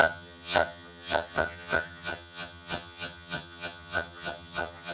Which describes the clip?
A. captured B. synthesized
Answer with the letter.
B